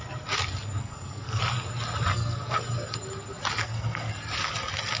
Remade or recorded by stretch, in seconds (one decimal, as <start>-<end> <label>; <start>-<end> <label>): 0.0-0.8 recorded; 0.8-1.4 remade; 1.4-2.1 recorded; 2.1-2.6 remade; 2.6-3.6 recorded; 3.6-4.1 remade; 4.1-5.0 recorded